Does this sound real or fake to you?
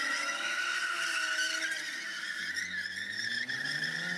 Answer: real